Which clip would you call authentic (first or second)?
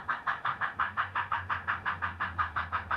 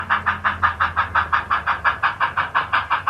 second